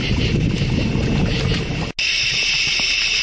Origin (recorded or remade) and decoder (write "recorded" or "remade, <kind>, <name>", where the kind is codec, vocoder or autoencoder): recorded